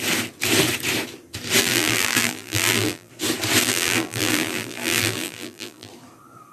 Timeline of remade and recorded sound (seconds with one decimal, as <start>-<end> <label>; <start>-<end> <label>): 0.0-1.6 recorded; 1.6-3.1 remade; 3.1-3.6 recorded; 3.6-5.9 remade; 5.9-6.5 recorded